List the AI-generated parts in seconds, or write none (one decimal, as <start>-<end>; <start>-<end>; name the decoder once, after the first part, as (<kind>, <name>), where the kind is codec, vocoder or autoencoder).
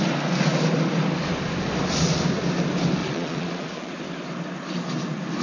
3.0-3.9 (vocoder, Vocos)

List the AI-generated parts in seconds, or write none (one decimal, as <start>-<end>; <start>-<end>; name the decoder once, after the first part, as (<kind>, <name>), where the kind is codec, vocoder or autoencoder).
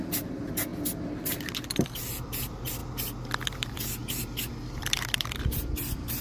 0.0-0.7 (vocoder, BigVGAN v2); 2.1-2.8; 3.6-4.0; 5.8-6.2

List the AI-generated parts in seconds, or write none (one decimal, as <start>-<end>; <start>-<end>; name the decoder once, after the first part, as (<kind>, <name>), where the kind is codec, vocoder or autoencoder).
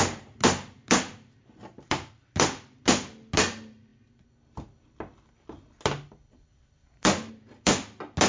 none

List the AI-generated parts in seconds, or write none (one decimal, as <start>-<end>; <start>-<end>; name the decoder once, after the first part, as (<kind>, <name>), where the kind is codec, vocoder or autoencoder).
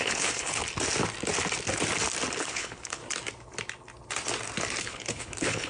0.0-0.6 (codec, HILCodec); 2.4-3.0; 4.8-5.7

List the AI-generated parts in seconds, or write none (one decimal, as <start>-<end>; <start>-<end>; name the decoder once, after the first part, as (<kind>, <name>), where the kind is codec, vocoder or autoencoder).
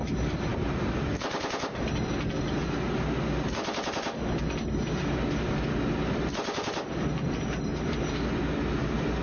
none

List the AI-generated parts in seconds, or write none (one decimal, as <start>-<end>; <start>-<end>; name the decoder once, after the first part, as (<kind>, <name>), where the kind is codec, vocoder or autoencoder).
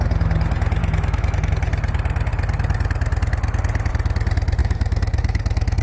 0.8-1.5 (autoencoder, DAC-VAE); 4.6-5.8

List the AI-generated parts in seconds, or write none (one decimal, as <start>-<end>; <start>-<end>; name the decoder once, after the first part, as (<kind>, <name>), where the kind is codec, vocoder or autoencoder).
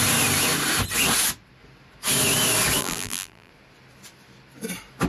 2.8-3.5 (vocoder, BigVGAN v2)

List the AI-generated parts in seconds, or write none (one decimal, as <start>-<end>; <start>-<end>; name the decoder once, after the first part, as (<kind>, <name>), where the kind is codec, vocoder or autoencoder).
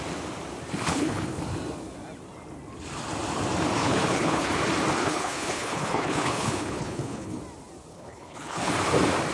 0.9-1.4 (codec, HILCodec); 3.8-4.5; 5.0-7.4; 7.9-8.7